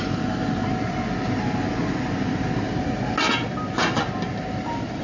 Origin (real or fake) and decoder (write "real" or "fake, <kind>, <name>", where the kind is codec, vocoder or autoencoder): real